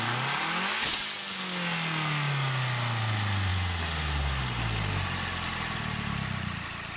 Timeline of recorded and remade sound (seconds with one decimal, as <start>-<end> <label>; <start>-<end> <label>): 0.0-7.0 recorded